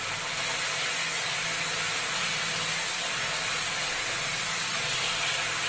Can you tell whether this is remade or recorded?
recorded